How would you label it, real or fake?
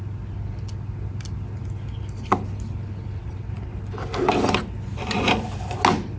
real